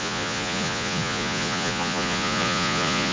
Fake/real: fake